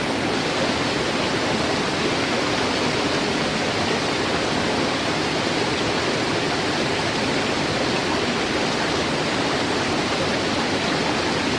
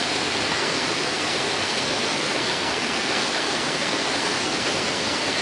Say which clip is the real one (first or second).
first